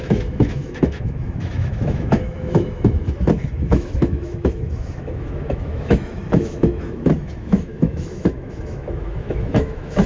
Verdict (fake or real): fake